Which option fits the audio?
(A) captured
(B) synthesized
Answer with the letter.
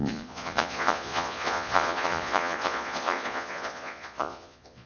B